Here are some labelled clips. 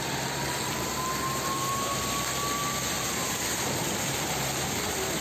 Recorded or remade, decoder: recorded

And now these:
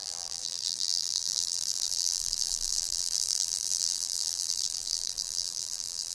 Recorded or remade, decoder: remade, vocoder, BigVGAN v2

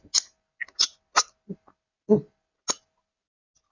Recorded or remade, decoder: recorded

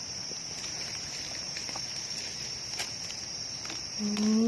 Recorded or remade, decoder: recorded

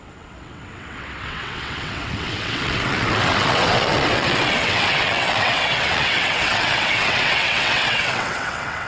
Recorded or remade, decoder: remade, vocoder, WaveNeXt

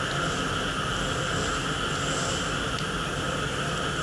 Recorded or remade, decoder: recorded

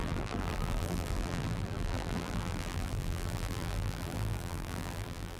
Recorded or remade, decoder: remade, vocoder, BigVGAN v2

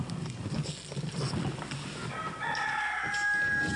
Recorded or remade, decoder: recorded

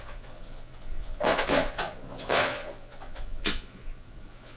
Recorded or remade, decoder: remade, vocoder, Vocos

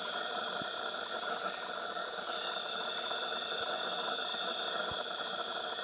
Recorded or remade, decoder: recorded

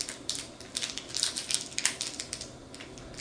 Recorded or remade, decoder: recorded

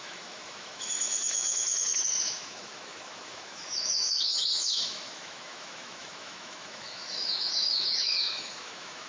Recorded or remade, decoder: remade, autoencoder, DAC-VAE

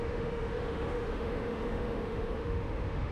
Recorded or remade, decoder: remade, autoencoder, DAC-VAE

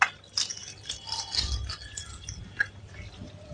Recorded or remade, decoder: recorded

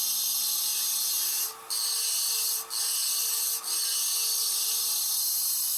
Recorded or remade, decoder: recorded